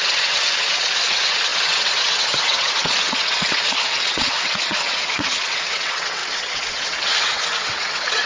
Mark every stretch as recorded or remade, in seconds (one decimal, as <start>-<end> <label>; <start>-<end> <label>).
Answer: 0.0-8.3 remade